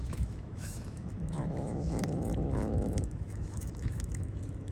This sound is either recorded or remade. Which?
remade